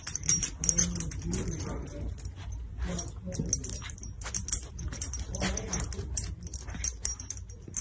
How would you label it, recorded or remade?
recorded